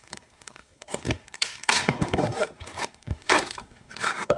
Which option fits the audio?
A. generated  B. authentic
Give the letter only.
A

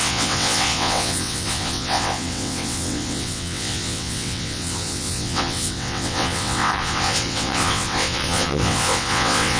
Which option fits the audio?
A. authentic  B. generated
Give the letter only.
B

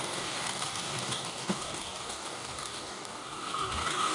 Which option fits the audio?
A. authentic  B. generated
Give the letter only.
B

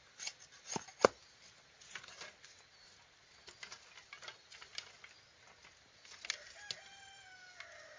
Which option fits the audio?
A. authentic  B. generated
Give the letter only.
A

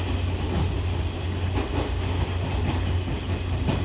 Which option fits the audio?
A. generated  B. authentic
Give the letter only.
B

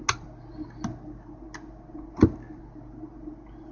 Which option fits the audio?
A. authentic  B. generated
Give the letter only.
A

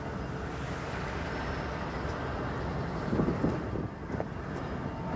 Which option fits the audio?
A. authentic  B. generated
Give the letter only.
A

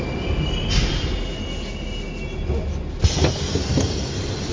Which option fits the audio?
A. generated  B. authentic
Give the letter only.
B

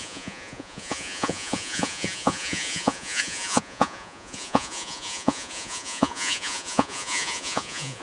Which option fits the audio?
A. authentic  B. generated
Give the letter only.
B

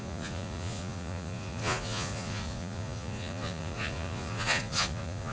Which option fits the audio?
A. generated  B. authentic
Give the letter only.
A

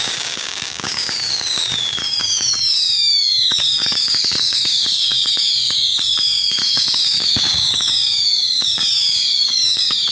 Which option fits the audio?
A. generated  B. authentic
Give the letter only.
A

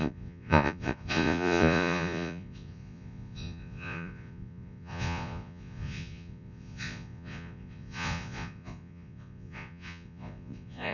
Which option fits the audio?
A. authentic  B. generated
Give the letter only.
B